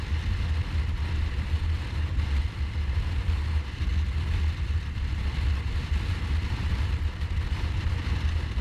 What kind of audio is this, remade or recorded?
remade